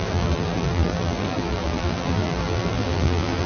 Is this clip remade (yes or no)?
yes